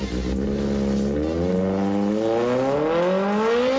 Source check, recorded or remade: recorded